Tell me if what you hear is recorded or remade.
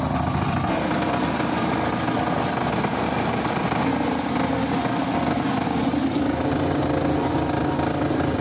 recorded